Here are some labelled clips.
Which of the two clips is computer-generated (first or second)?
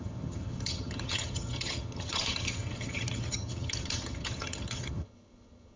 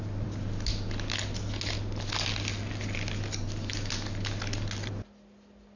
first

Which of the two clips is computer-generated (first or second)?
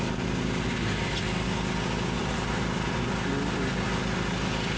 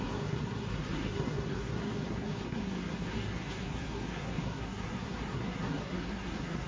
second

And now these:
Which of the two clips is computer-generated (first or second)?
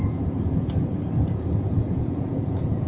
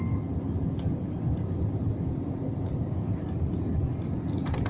first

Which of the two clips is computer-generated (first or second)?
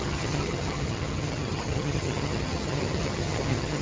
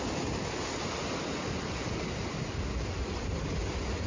first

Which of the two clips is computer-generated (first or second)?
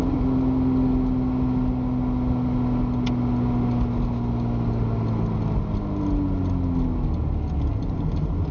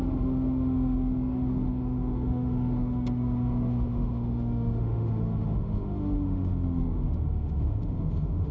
second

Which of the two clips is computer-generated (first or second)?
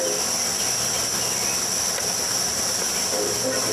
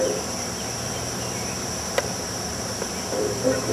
second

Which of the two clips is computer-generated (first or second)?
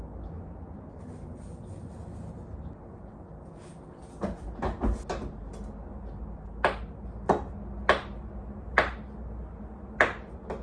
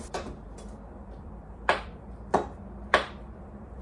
second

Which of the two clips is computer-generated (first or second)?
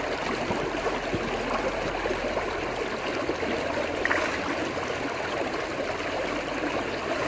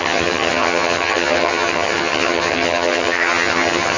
second